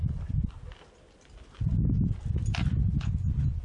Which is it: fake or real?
real